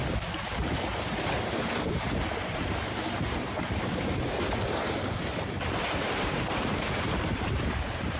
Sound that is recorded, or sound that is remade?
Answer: remade